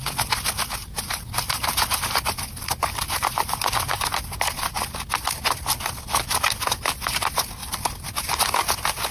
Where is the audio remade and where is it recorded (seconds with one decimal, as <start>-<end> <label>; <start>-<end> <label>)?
0.0-0.8 recorded; 0.8-4.7 remade; 4.7-7.6 recorded; 7.6-8.3 remade; 8.3-9.1 recorded